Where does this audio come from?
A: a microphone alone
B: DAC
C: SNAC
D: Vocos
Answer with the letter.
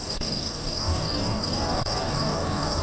B